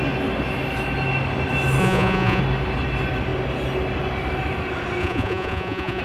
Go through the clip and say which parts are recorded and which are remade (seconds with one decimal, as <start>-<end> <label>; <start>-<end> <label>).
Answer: 0.0-1.8 recorded; 1.8-2.4 remade; 2.4-5.0 recorded; 5.0-6.0 remade